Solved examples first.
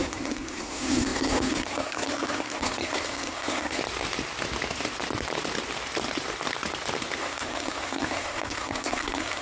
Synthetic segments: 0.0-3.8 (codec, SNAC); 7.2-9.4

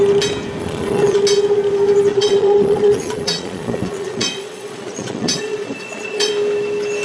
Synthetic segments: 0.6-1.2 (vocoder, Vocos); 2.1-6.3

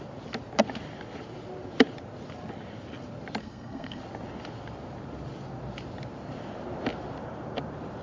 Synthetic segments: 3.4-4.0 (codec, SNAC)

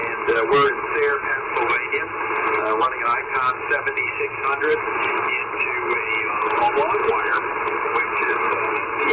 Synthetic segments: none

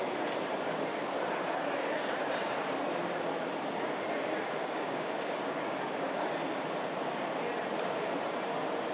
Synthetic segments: 4.6-6.2 (codec, DAC)